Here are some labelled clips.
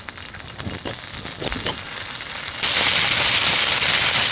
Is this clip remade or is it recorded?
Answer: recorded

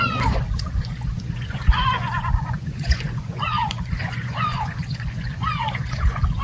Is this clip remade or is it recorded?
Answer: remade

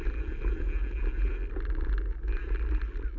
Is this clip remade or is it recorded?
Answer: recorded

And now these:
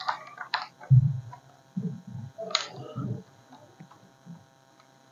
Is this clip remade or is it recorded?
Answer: remade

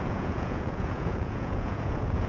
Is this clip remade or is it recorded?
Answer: remade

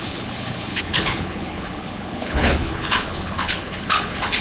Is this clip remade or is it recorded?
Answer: remade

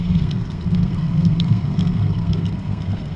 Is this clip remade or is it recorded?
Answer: remade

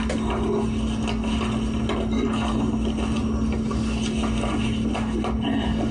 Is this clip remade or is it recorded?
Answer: recorded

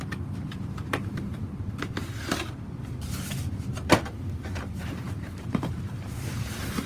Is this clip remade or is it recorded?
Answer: remade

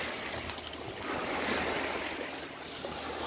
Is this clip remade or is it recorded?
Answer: recorded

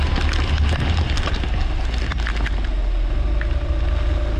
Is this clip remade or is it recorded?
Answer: recorded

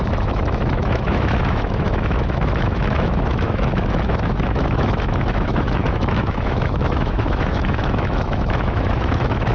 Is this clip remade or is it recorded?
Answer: remade